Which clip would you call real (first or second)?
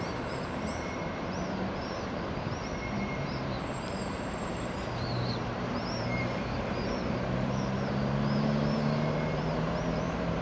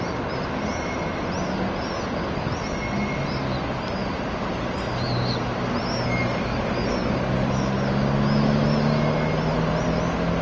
second